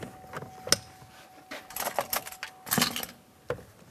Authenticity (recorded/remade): recorded